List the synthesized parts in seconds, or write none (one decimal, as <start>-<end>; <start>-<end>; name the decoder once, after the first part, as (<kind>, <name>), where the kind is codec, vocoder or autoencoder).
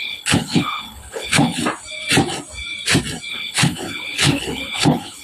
0.0-1.6 (codec, HILCodec); 3.3-5.2